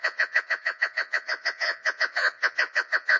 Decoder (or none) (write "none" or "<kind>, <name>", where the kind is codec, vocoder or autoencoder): vocoder, Vocos